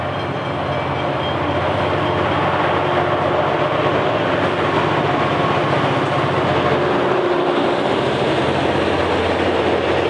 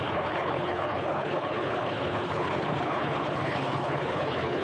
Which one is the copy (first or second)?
second